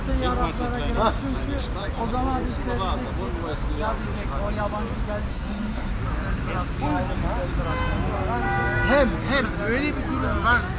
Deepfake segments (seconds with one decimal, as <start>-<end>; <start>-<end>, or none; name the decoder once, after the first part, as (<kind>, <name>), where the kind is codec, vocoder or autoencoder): 5.3-5.9 (codec, SNAC)